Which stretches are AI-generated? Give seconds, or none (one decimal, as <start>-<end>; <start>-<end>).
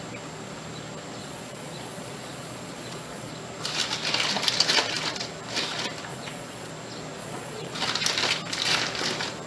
1.2-3.3; 6.1-6.7; 7.2-7.8